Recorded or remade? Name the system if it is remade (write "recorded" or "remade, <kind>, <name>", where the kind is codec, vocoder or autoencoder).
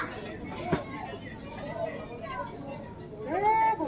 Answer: recorded